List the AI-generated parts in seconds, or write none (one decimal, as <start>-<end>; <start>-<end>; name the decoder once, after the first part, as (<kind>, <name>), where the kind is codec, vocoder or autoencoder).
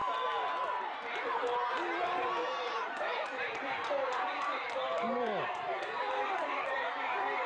0.0-0.6 (vocoder, BigVGAN v2); 2.4-6.9